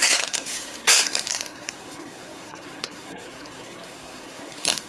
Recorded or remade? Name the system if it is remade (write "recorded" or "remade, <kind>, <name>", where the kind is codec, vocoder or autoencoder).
remade, codec, SNAC